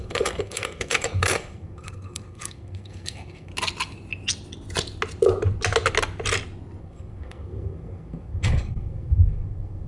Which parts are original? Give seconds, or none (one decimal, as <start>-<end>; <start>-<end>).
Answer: 3.5-6.8